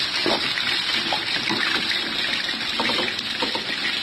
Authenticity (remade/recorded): recorded